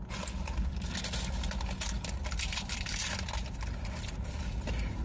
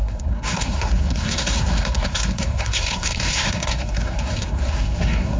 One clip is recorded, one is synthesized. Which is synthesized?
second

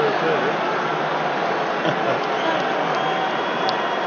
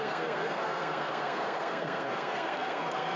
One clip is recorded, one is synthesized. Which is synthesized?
second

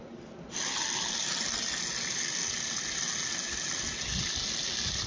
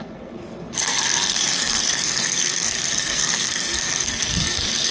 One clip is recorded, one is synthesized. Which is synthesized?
second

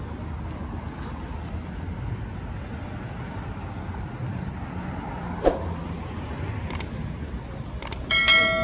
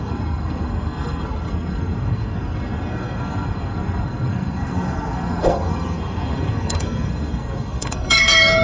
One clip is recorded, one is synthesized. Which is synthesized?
second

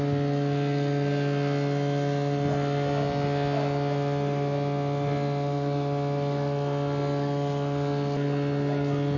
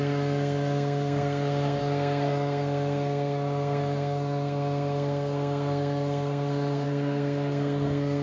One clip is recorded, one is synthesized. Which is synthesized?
second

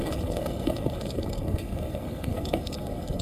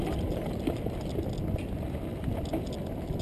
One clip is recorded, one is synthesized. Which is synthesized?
first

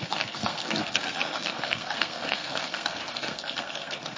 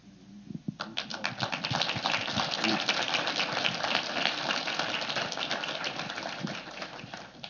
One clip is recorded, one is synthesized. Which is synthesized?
first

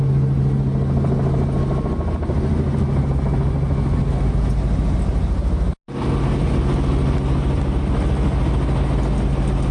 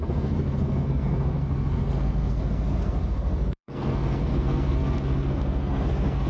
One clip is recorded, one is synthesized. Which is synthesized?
second